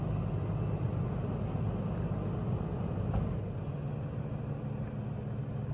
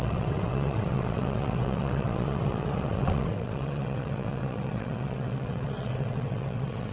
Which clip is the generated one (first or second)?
second